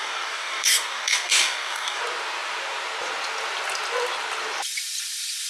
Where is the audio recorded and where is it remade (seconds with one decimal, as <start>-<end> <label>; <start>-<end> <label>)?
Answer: 0.0-2.0 remade; 2.0-5.5 recorded